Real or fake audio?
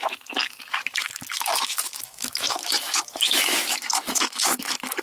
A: fake